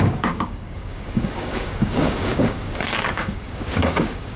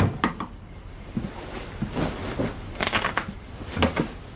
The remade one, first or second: first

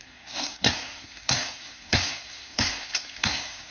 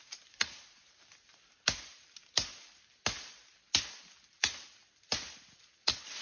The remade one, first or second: first